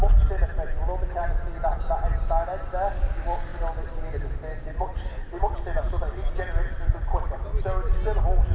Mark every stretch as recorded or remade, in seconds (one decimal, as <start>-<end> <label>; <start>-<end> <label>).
0.0-3.5 recorded; 3.5-5.4 remade; 5.4-8.5 recorded